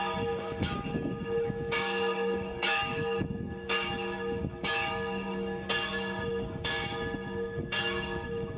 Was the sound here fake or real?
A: fake